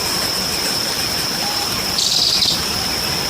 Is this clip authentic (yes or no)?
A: yes